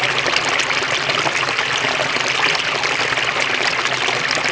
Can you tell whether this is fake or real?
real